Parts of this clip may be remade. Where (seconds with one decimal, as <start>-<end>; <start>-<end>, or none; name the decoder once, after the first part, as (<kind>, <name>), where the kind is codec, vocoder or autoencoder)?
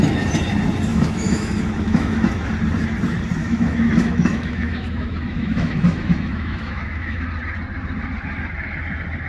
0.9-2.3 (autoencoder, DAC-VAE); 3.4-7.2